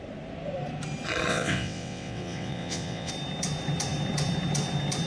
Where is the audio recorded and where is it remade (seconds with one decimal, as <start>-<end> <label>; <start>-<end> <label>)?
0.0-1.3 recorded; 1.3-3.1 remade; 3.1-5.1 recorded